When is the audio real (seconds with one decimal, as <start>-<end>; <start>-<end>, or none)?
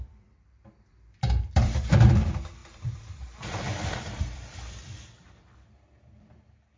none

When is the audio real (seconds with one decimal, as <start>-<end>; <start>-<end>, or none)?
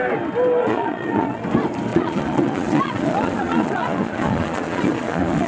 0.0-0.6; 1.4-1.9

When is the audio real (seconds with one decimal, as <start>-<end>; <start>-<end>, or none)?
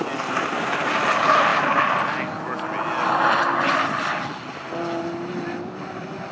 0.0-6.3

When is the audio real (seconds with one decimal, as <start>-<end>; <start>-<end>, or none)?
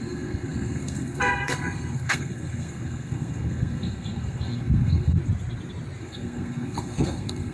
5.2-6.0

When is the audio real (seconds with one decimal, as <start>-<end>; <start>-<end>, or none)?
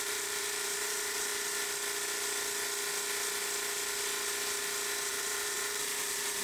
1.3-5.1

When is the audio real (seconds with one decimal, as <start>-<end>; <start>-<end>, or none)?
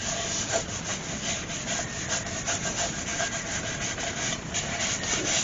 0.0-0.9; 2.1-3.1; 4.2-5.4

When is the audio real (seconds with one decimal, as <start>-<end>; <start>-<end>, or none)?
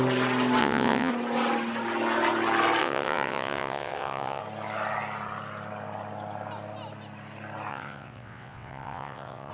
0.0-0.6; 1.1-2.8; 4.4-7.7